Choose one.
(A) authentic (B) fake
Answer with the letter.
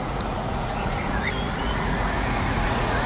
B